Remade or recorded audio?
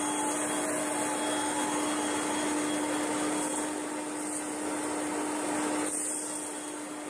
recorded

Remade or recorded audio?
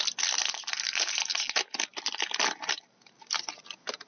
recorded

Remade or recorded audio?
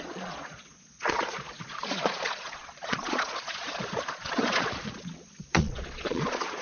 remade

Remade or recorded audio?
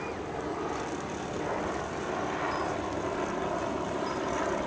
recorded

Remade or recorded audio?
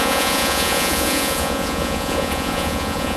remade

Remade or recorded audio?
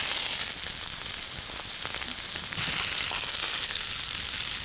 recorded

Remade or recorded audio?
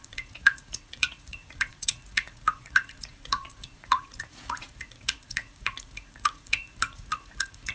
remade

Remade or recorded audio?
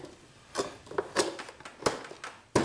recorded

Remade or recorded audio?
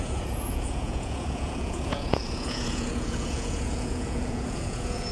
remade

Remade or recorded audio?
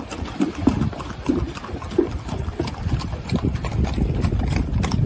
recorded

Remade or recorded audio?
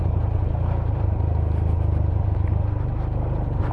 recorded